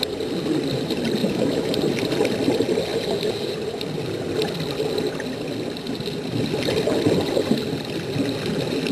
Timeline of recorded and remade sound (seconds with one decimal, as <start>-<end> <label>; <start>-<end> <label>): 0.0-1.2 recorded; 1.2-1.7 remade; 1.7-8.9 recorded

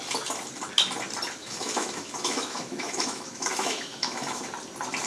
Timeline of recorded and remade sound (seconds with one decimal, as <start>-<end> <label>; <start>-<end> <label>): 0.0-1.4 recorded; 1.4-4.5 remade; 4.5-5.1 recorded

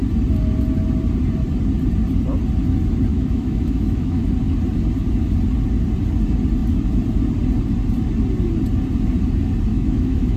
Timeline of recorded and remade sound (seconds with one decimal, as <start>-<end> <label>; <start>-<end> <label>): 0.0-3.1 recorded; 3.1-4.2 remade; 4.2-9.7 recorded; 9.7-10.4 remade

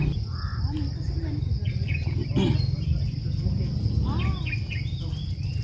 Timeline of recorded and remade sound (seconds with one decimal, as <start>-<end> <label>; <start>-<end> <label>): 0.0-5.6 recorded

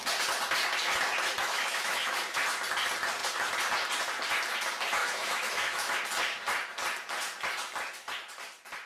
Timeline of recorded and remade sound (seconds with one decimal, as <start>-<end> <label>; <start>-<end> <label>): 0.0-1.4 recorded; 1.4-2.2 remade; 2.2-5.0 recorded; 5.0-6.0 remade; 6.0-8.9 recorded

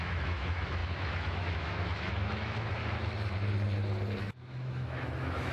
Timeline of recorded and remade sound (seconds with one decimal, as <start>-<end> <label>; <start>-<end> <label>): 0.0-2.8 remade; 2.8-4.2 recorded; 4.2-5.5 remade

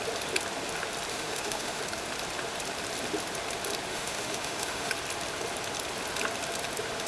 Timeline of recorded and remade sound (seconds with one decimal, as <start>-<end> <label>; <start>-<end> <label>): 0.0-1.1 recorded; 1.1-1.8 remade; 1.8-3.9 recorded; 3.9-4.9 remade; 4.9-7.1 recorded